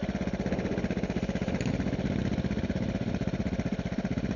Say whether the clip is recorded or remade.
recorded